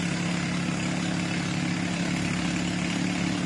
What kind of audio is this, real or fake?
real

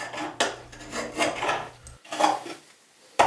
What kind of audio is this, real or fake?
real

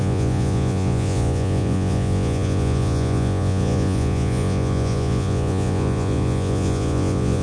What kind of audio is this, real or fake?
fake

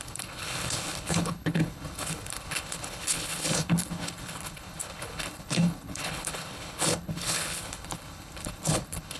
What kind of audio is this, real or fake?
fake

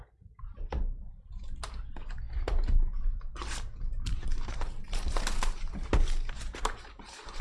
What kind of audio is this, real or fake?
fake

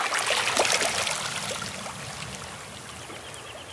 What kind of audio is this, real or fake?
real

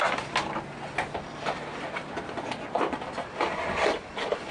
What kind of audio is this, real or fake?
real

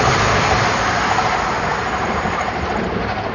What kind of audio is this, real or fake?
real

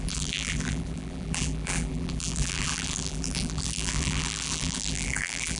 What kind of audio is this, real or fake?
fake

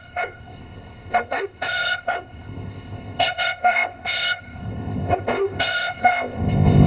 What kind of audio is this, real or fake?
fake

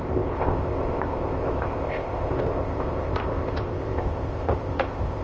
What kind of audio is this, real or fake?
fake